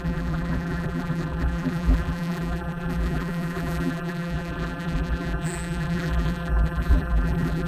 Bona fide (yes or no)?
no